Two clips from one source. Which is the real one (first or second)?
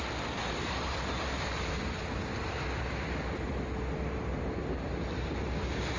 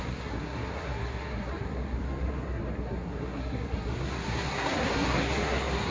first